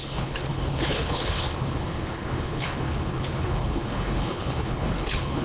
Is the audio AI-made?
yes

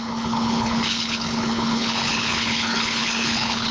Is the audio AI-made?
yes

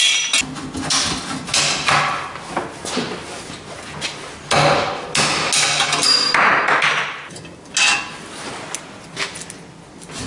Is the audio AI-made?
no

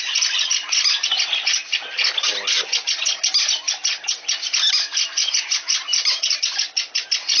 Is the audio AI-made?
no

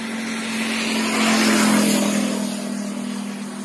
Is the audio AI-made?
no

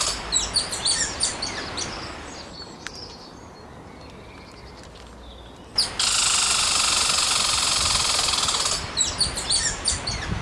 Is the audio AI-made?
no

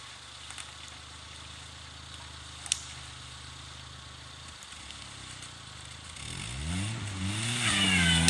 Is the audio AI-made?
no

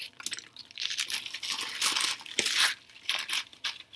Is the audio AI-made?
no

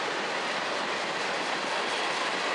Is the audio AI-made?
no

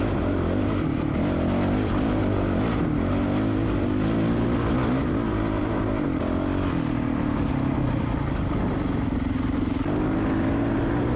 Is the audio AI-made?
no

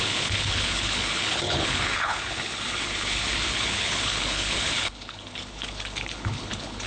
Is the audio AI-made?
yes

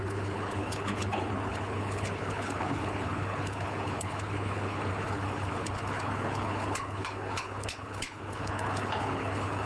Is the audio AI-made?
yes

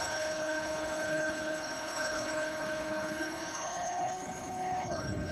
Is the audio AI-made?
yes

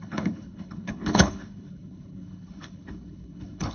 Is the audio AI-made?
yes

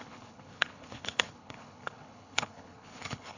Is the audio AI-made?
yes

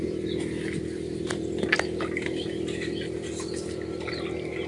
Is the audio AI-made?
no